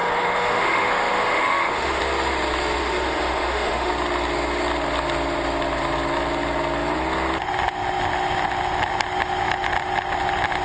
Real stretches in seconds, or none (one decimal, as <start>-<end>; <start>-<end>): 2.0-2.8; 3.9-10.6